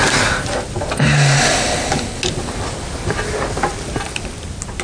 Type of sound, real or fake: real